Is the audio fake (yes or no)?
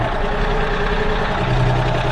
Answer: yes